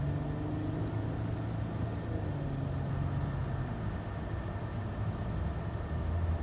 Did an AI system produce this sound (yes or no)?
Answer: no